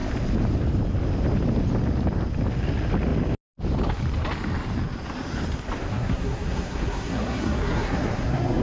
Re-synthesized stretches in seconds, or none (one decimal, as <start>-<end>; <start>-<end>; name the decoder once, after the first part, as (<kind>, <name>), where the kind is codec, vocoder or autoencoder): 5.9-8.6 (codec, SNAC)